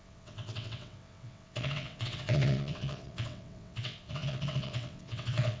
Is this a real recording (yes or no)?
no